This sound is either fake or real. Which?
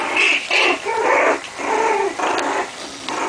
real